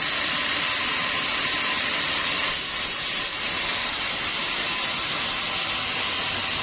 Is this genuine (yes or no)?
yes